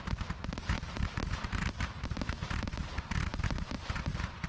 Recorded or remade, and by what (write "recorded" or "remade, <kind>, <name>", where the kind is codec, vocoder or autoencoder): remade, vocoder, BigVGAN v2